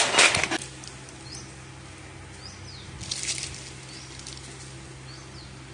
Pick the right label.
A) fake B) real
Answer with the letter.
B